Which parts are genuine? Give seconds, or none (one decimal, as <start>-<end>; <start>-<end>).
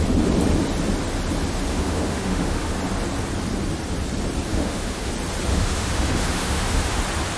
0.0-1.7; 2.7-4.5; 5.1-5.5; 7.0-7.4